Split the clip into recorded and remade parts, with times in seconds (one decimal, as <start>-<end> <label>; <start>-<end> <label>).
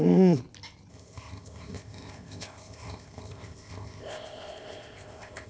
0.0-0.4 remade; 0.4-0.9 recorded; 0.9-5.5 remade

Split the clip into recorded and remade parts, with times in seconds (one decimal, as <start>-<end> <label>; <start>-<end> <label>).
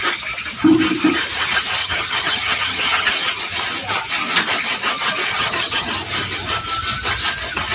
0.0-1.8 recorded; 1.8-3.1 remade; 3.1-5.3 recorded; 5.3-5.9 remade; 5.9-7.7 recorded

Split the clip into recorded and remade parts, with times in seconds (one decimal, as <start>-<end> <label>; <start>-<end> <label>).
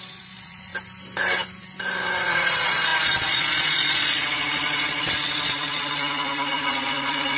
0.0-0.7 remade; 0.7-2.2 recorded; 2.2-7.4 remade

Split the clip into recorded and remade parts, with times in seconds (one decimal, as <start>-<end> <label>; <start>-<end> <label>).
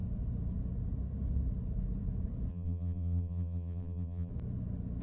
0.0-2.5 recorded; 2.5-4.3 remade; 4.3-5.0 recorded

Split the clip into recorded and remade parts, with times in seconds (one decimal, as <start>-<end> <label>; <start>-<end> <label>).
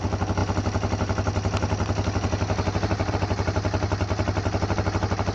0.0-5.3 recorded